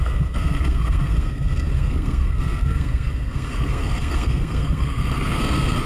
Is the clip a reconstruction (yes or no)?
yes